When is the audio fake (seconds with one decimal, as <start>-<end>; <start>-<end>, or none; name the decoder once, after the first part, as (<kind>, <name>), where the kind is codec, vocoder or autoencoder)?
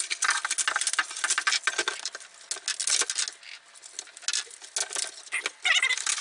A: none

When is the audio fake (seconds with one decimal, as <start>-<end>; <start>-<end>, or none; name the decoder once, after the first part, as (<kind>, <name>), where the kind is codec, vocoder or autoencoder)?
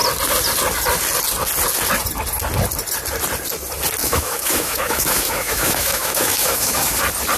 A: 4.0-6.9 (autoencoder, DAC-VAE)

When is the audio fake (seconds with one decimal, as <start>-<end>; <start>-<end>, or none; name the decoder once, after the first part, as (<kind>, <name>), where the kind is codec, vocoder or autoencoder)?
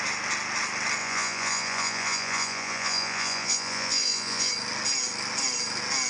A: 1.0-4.5 (vocoder, Vocos)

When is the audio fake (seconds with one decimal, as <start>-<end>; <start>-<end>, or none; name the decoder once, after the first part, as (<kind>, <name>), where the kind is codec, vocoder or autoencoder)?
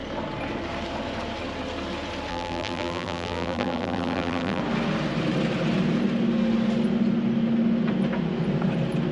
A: 2.3-4.6 (vocoder, BigVGAN v2)